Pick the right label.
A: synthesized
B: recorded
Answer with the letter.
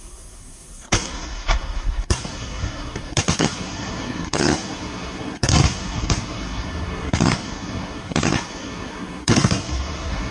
A